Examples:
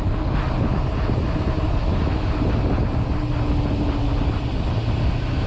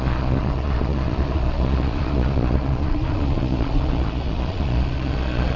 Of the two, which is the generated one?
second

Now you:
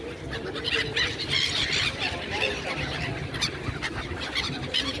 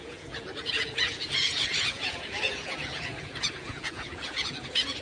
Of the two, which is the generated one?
second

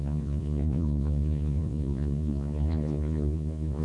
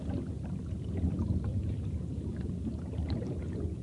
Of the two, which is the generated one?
first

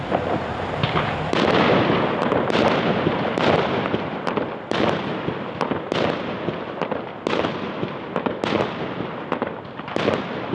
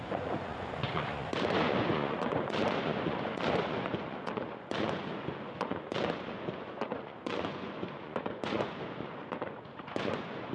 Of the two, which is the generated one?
second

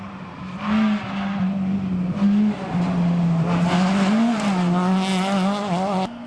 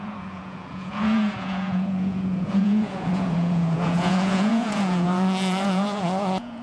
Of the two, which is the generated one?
second